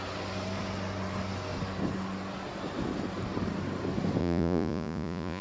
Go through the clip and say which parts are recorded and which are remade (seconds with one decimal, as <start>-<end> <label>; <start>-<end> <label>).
0.0-4.2 recorded; 4.2-5.4 remade